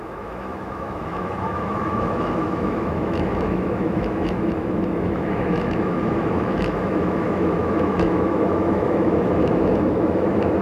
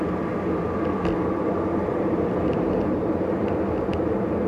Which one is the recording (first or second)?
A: second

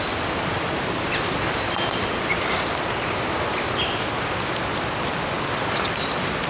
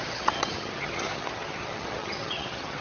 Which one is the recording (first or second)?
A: first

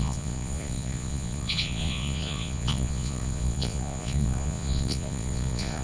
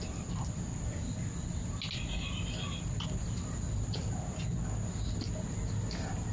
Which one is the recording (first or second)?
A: second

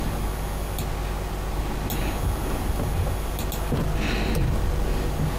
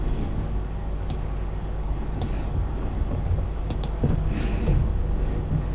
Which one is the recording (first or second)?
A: first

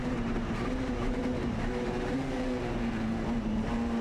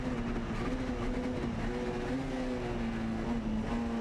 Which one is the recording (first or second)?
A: second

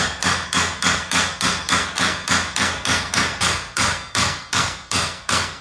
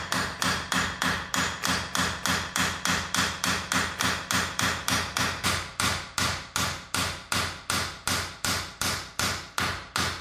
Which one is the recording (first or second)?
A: second